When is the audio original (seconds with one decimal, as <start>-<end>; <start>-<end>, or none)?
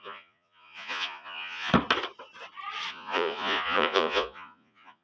1.7-2.9